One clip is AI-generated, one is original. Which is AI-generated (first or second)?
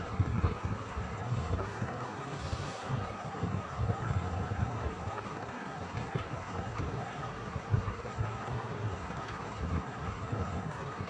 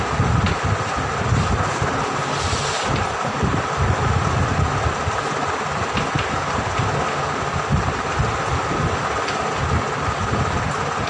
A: first